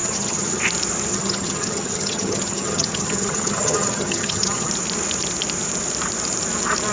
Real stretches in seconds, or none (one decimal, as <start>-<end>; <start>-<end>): 0.6-1.1; 4.7-6.9